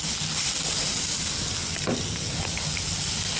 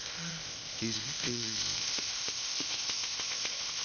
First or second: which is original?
first